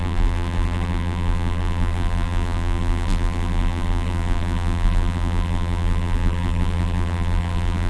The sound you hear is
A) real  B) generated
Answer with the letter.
B